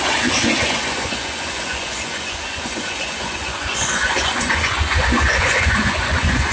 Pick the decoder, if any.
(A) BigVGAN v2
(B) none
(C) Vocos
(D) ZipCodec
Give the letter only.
C